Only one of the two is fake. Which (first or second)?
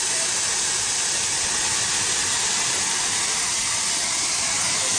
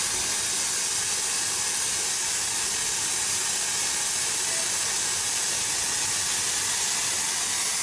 first